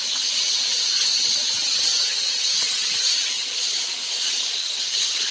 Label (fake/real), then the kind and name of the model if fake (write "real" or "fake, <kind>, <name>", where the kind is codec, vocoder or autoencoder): fake, vocoder, WaveNeXt